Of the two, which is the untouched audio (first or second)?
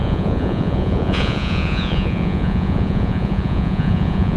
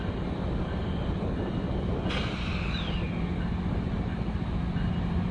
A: second